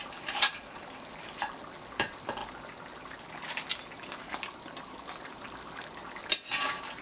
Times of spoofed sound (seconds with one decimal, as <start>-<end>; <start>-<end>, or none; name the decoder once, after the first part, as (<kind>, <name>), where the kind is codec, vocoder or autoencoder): 0.0-2.4 (vocoder, BigVGAN v2); 4.4-7.0